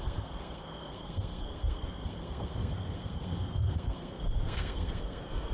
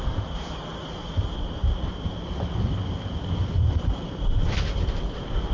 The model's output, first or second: first